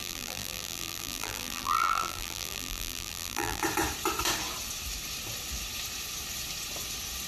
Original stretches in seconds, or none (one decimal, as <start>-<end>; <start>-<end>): 3.6-7.3